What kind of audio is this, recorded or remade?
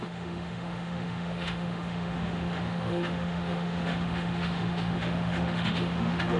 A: remade